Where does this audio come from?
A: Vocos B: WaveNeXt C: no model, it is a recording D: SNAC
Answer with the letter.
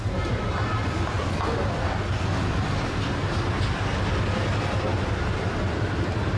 C